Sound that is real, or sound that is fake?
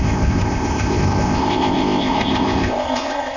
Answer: fake